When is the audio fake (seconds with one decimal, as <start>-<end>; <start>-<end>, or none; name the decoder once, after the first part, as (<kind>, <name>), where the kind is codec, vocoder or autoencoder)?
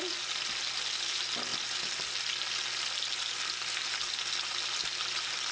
none